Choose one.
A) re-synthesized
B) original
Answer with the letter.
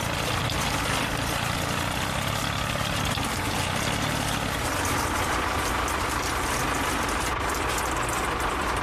B